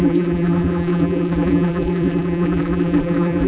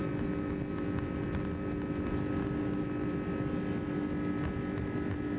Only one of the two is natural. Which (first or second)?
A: second